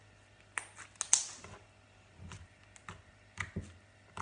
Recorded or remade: recorded